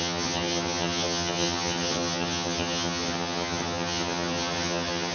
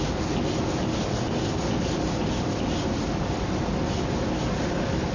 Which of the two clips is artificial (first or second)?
first